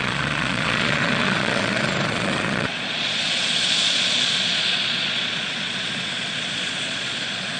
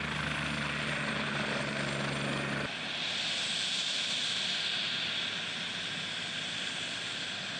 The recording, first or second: second